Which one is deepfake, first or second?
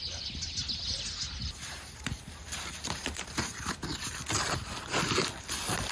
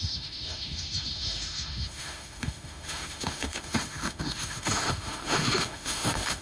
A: second